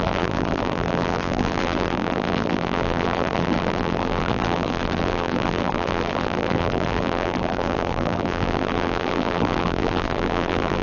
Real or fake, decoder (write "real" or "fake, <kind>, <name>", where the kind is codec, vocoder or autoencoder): fake, vocoder, BigVGAN v2